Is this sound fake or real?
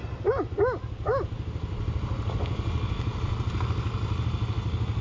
real